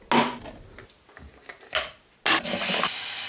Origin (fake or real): real